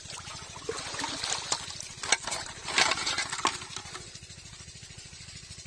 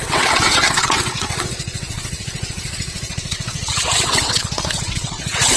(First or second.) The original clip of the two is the first